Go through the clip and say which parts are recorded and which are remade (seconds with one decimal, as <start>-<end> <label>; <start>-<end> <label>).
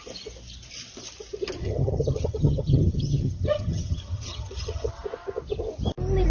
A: 0.0-1.6 recorded; 1.6-4.9 remade; 4.9-6.3 recorded